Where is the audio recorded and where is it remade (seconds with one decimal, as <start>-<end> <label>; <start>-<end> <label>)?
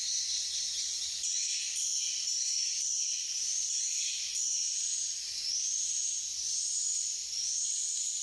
0.0-8.2 recorded